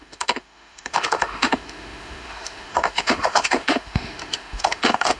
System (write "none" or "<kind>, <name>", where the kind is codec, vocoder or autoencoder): autoencoder, DAC-VAE